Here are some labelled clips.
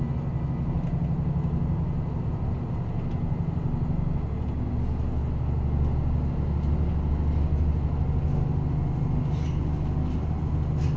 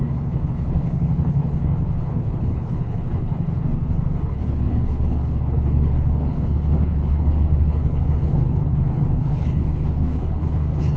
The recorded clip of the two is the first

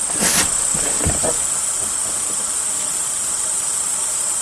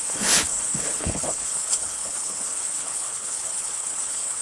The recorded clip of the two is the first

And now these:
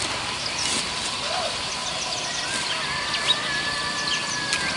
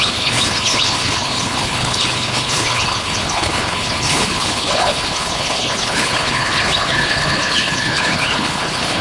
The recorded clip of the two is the first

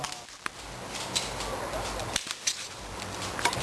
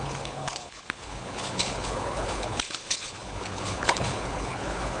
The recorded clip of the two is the first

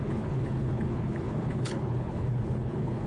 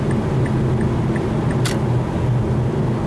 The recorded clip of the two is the second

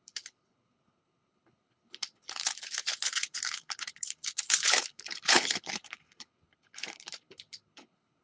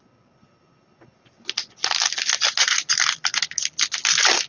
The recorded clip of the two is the second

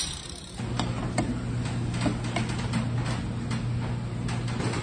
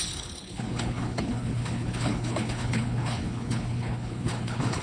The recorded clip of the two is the first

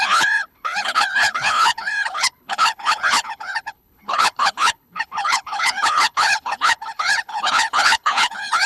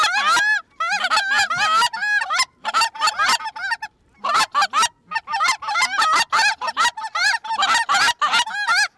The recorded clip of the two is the second